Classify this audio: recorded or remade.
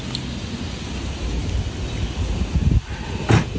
recorded